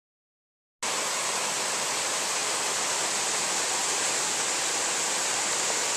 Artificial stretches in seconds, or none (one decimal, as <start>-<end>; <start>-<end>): none